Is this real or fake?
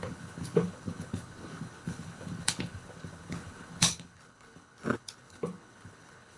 fake